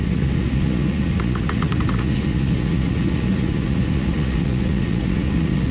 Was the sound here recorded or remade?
remade